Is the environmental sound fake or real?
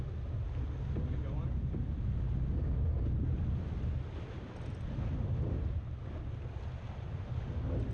real